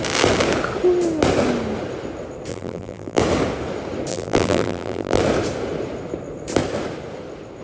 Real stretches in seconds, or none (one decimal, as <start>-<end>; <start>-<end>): 0.0-2.5; 3.2-4.1; 5.2-7.6